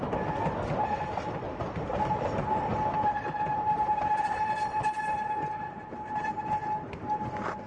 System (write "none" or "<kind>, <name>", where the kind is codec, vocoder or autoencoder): none